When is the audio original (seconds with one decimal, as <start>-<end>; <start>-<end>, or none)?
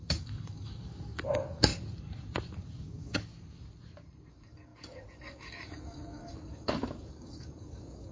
1.7-2.8; 3.3-4.3